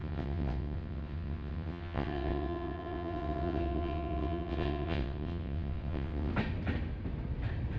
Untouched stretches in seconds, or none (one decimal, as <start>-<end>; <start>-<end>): 6.3-7.8